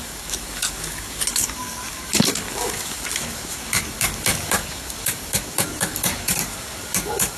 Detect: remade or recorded remade